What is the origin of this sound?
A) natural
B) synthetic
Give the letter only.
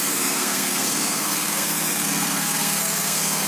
B